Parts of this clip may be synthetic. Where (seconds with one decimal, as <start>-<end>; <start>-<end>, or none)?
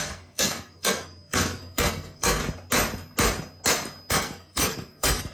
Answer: 0.0-2.4; 4.1-5.3